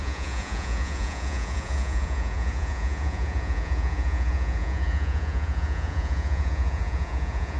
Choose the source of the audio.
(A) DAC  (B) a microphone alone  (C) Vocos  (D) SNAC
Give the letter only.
C